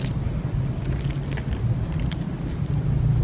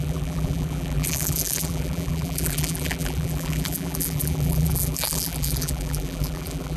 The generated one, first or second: second